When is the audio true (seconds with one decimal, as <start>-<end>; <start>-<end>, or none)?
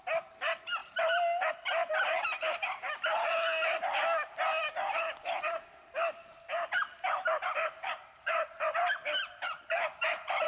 0.0-2.2; 3.3-7.6